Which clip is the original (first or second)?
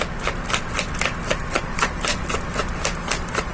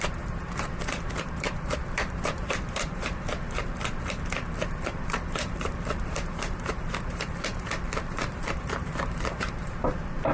first